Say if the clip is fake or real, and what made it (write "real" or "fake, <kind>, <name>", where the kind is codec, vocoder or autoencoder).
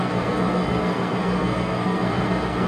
fake, codec, SNAC